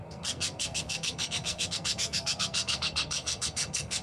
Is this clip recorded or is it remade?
remade